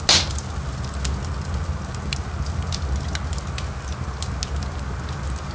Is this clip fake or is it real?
real